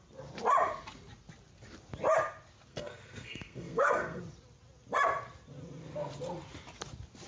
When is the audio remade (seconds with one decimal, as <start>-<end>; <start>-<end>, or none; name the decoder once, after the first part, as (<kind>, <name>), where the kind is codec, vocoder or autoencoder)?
2.7-4.2 (codec, SNAC)